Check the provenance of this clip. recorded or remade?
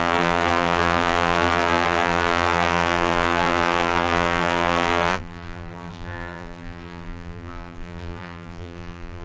remade